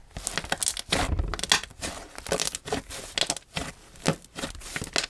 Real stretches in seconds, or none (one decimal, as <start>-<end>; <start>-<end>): 0.0-5.1